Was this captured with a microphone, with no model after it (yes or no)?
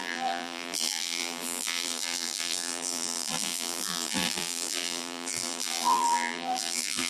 no